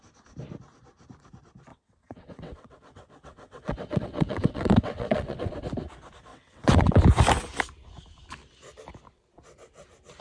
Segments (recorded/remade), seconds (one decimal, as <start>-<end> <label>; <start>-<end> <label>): 0.0-1.7 recorded; 1.7-5.5 remade; 5.5-6.3 recorded; 6.3-7.0 remade; 7.0-10.2 recorded